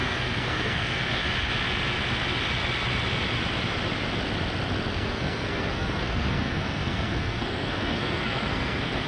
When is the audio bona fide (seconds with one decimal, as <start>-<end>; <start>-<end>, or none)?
1.2-4.9